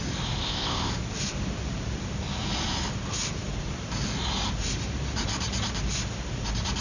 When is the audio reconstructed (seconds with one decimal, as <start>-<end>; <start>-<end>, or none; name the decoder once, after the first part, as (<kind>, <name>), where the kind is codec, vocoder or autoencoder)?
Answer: 0.4-0.9 (codec, ZipCodec)